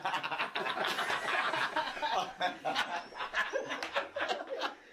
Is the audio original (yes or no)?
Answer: no